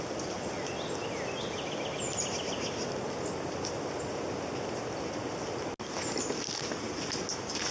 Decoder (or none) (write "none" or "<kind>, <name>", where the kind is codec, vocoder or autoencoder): none